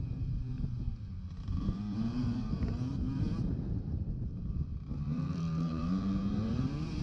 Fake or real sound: fake